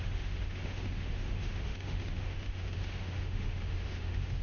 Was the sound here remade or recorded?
remade